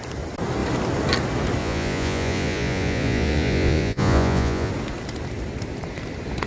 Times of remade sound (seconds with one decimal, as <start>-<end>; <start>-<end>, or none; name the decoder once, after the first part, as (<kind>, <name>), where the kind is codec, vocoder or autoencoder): 1.6-4.7 (vocoder, Vocos)